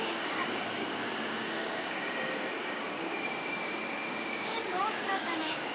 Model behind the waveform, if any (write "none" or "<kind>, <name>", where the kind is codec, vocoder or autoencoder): codec, DAC